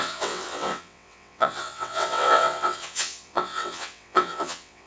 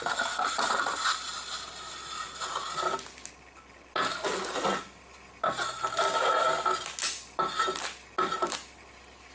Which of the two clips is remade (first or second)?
first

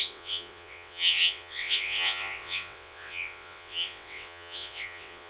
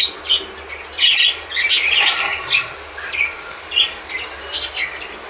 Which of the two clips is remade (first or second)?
first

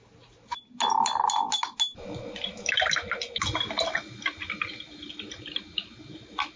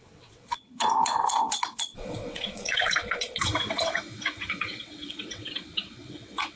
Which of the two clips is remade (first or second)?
second